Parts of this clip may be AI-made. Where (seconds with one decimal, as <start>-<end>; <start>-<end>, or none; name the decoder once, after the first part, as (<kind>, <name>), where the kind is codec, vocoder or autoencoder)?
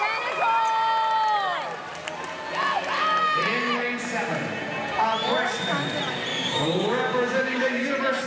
6.3-7.9 (codec, DAC)